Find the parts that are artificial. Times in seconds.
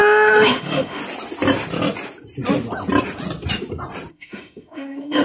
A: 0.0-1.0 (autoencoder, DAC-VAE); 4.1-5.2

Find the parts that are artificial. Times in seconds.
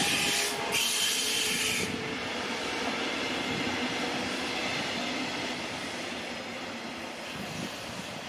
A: 0.0-0.7 (vocoder, BigVGAN v2); 4.6-6.1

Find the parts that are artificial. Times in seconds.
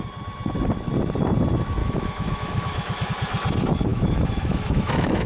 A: 1.8-3.1 (autoencoder, DAC-VAE); 3.9-5.3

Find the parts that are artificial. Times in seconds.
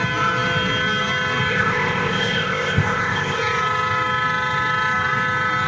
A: 1.5-3.4 (codec, ZipCodec)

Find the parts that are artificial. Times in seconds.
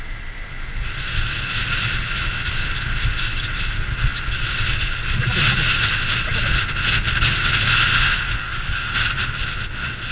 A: 8.4-8.9 (codec, DAC)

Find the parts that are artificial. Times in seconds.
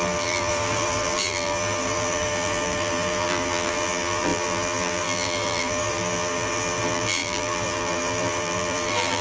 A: 0.0-9.2 (vocoder, BigVGAN v2)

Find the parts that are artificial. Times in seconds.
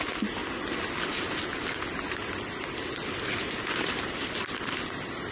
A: none